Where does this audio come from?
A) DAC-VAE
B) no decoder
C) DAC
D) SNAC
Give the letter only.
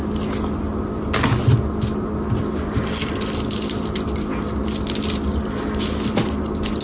B